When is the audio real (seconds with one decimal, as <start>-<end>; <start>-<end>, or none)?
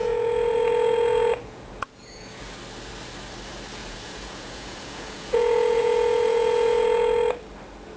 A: 2.4-3.8; 7.2-8.0